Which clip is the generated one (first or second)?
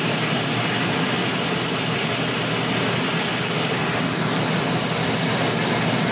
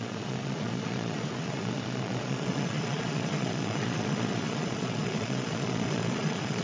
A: second